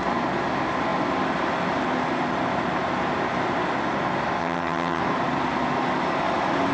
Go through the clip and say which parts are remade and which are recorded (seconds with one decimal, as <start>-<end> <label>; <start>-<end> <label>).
0.0-4.4 recorded; 4.4-5.0 remade; 5.0-6.7 recorded